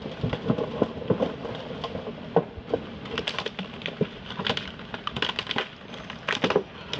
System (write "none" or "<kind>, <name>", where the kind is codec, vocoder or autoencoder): none